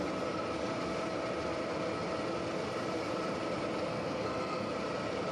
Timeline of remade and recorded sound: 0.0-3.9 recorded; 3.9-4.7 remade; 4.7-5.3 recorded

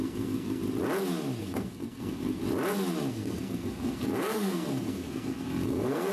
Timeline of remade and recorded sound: 0.0-0.6 remade; 0.6-1.4 recorded; 1.4-2.4 remade; 2.4-3.1 recorded; 3.1-6.1 remade

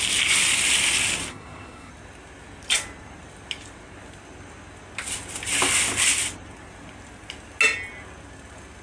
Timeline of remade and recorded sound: 0.0-1.3 recorded; 1.3-1.9 remade; 1.9-8.8 recorded

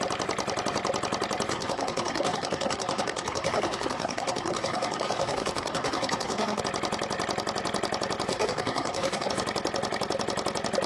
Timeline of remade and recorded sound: 0.0-1.5 recorded; 1.5-6.6 remade; 6.6-8.3 recorded; 8.3-9.3 remade; 9.3-10.9 recorded

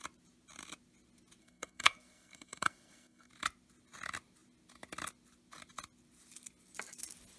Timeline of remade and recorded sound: 0.0-1.4 recorded; 1.4-3.3 remade; 3.3-7.4 recorded

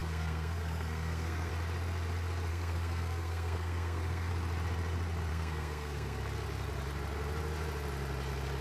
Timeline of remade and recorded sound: 0.0-1.5 remade; 1.5-2.5 recorded; 2.5-4.3 remade; 4.3-5.3 recorded; 5.3-6.2 remade; 6.2-8.6 recorded

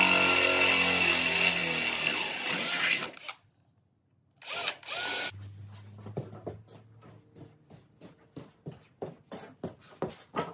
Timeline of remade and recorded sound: 0.0-10.5 recorded